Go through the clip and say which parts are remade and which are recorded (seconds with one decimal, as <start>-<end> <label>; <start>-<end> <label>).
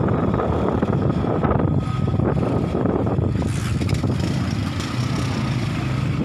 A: 0.0-6.2 recorded